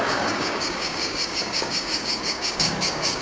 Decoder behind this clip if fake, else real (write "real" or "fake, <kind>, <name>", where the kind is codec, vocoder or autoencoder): fake, codec, DAC